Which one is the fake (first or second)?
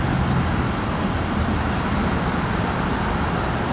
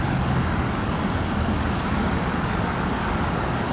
second